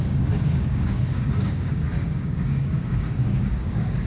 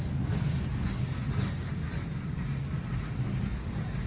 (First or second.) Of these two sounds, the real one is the second